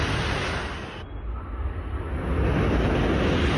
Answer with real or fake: real